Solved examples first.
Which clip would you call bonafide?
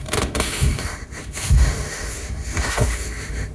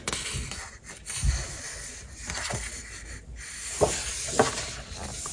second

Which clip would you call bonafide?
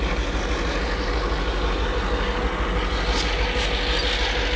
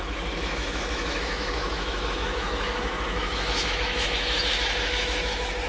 first